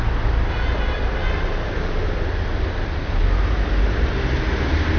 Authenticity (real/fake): real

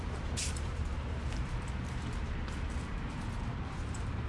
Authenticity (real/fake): fake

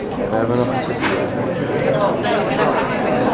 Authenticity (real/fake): real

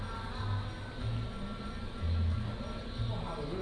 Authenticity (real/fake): real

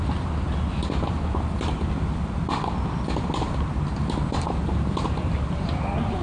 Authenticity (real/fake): real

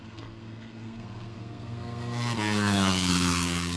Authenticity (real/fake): fake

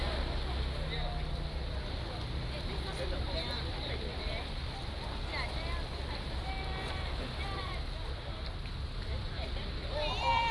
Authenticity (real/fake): real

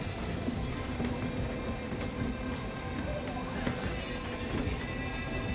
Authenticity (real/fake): real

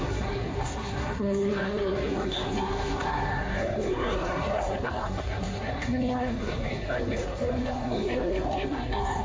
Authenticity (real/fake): fake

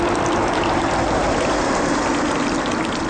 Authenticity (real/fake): real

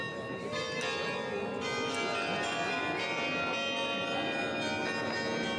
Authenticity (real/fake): real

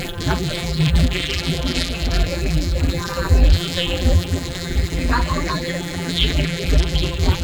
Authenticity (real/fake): fake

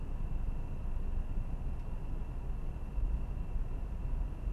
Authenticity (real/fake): real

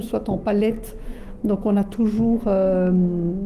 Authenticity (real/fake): fake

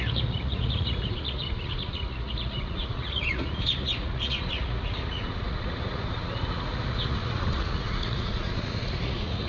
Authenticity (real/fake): fake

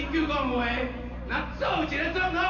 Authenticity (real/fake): real